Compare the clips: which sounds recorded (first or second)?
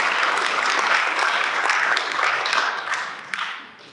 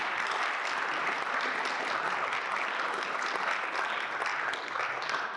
second